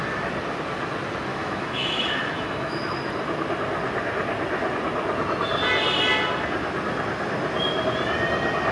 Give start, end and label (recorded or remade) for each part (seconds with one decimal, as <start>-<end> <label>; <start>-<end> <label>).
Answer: 0.0-1.3 recorded; 1.3-2.8 remade; 2.8-8.7 recorded